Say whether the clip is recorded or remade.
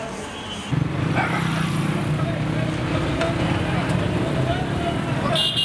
recorded